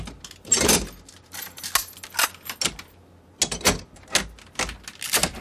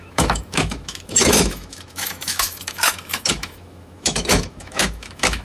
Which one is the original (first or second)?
first